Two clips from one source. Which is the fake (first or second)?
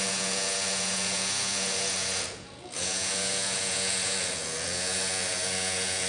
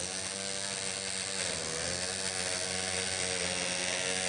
first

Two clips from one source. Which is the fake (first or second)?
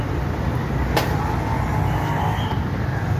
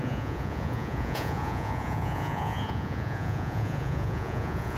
second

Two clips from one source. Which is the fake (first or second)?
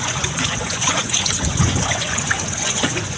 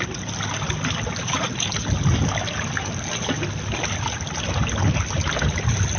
first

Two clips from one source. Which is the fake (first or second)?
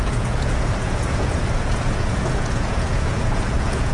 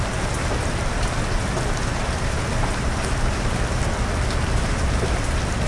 first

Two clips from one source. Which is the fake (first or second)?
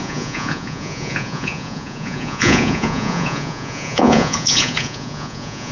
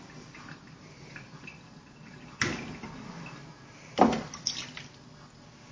first